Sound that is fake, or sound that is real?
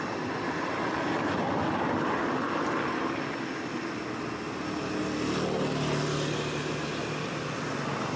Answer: real